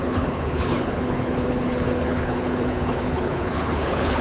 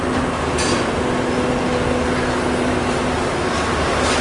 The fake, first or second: first